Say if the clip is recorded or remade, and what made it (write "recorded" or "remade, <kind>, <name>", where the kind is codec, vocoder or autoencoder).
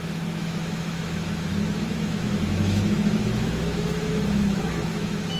remade, autoencoder, DAC-VAE